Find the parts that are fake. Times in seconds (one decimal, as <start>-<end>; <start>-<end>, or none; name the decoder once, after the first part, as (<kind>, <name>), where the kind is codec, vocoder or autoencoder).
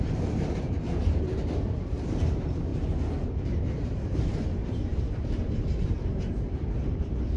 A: 0.0-2.7 (vocoder, BigVGAN v2); 3.4-7.4